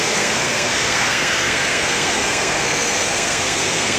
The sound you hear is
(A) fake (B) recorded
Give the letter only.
A